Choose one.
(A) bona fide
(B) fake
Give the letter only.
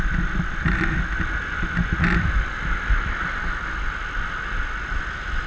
A